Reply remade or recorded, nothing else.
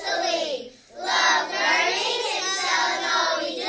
recorded